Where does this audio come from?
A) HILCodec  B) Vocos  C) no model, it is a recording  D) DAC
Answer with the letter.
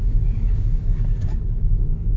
D